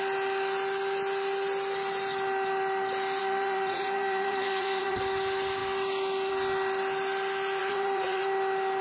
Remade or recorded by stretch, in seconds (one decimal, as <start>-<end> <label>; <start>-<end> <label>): 0.0-3.2 recorded; 3.2-5.0 remade; 5.0-7.6 recorded; 7.6-8.2 remade; 8.2-8.8 recorded